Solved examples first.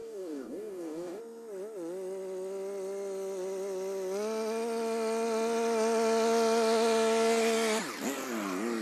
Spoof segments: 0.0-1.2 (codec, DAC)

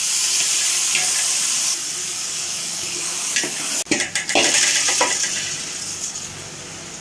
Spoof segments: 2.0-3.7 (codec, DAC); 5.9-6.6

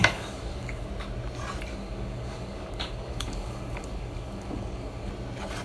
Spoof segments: 0.0-0.9 (codec, DAC); 1.7-5.1